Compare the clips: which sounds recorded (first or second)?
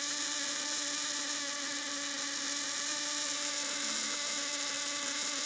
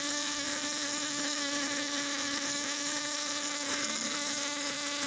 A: first